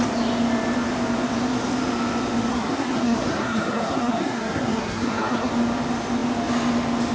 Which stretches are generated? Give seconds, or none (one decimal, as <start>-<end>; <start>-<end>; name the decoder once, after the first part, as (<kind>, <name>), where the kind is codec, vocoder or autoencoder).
2.5-5.5 (codec, SNAC)